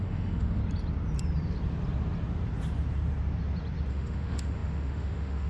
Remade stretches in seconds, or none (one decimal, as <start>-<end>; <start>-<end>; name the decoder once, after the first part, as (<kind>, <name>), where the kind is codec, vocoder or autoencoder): 0.0-0.6 (autoencoder, DAC-VAE); 3.9-5.5